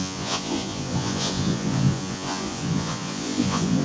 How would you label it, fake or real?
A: fake